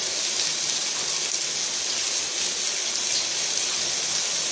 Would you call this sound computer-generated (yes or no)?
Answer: no